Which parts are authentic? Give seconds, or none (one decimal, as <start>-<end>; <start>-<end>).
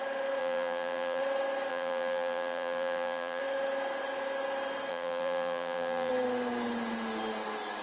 0.0-0.4; 1.2-1.7; 3.4-4.9; 6.1-7.8